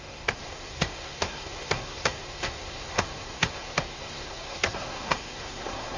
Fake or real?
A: fake